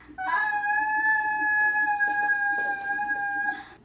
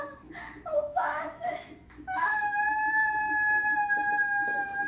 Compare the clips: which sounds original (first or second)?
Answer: first